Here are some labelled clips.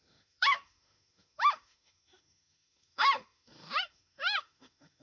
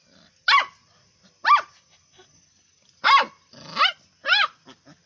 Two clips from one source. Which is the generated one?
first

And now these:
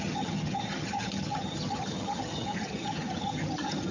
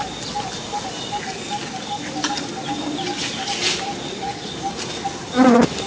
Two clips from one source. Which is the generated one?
first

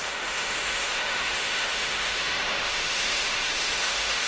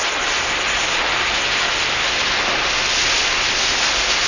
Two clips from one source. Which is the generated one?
first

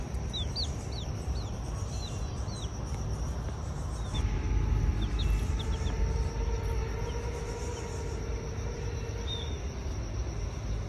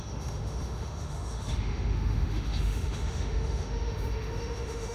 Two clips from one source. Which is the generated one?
second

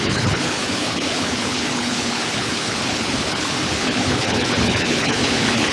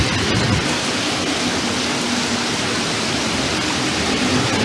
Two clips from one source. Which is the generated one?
first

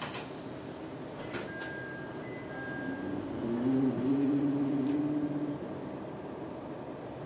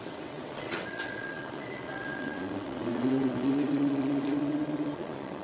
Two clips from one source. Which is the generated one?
second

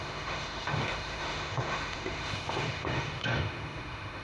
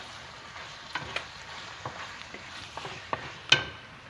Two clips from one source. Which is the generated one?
first